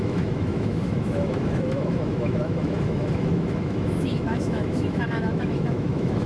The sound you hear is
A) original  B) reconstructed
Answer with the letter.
B